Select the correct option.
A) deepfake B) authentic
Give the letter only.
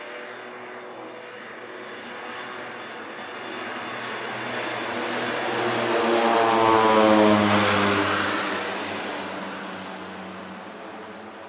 B